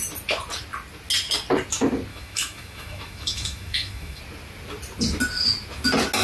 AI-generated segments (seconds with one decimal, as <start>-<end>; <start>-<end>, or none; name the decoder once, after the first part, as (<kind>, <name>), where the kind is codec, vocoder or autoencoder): 2.1-4.2 (autoencoder, DAC-VAE)